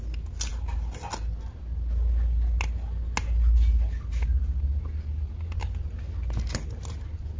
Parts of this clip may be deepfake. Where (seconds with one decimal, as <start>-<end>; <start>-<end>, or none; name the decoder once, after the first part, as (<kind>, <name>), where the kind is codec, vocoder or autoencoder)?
none